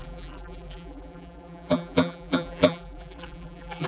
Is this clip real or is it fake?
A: fake